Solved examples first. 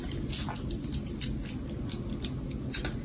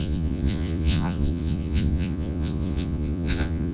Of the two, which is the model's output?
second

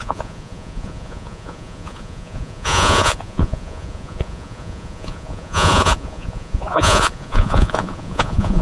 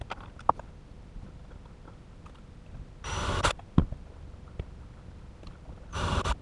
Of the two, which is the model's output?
first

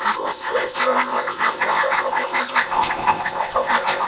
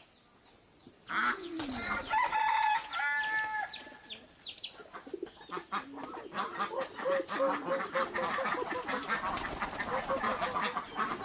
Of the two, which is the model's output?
first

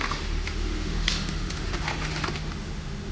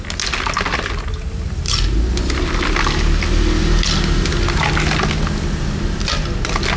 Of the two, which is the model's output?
first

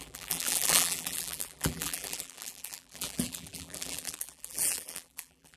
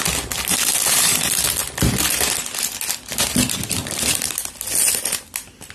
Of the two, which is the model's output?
first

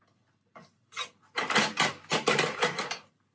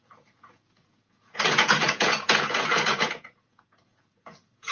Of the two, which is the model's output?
second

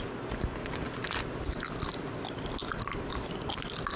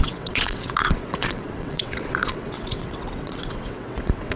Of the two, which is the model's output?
second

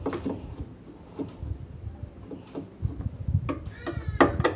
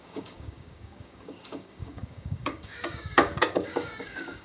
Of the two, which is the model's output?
second